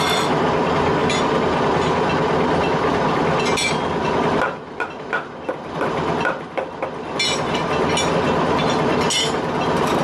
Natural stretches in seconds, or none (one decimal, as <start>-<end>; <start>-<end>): 0.0-10.0

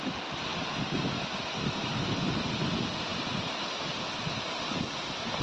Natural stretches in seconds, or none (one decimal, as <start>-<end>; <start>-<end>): 0.0-5.4

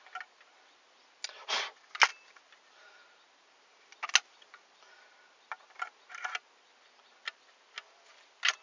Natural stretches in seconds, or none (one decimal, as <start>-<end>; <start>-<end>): 0.0-8.6